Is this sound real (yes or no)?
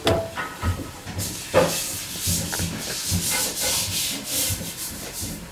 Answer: yes